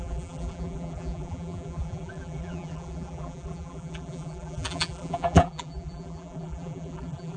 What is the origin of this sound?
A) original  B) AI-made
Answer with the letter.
B